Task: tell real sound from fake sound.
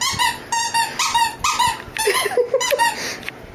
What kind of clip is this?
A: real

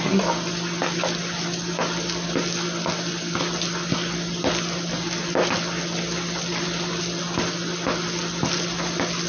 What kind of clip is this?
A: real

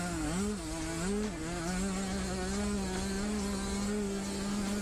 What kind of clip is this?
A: real